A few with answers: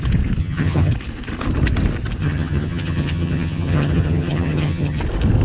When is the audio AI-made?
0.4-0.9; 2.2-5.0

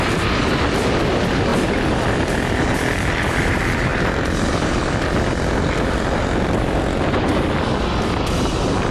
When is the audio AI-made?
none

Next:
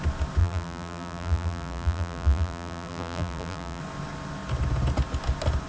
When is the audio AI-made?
0.4-3.8

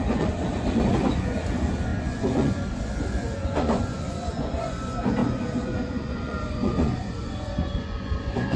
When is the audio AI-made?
0.0-8.6

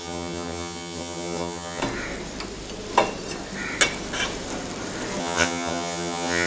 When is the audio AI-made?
0.0-1.8; 5.2-6.5